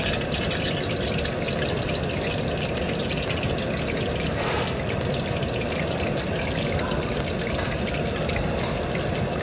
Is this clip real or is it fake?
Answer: real